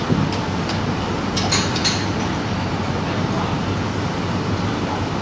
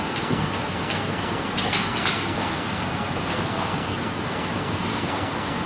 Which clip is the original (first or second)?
first